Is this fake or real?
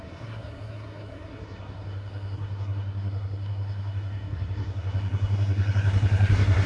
fake